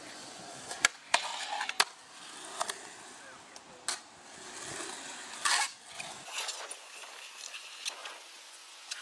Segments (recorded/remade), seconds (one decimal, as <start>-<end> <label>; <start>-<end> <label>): 0.0-1.3 remade; 1.3-5.9 recorded; 5.9-7.0 remade; 7.0-7.5 recorded; 7.5-9.0 remade